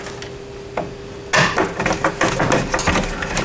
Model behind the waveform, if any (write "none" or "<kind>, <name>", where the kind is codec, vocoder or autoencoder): none